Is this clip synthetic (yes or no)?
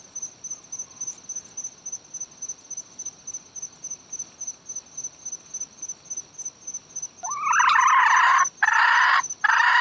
no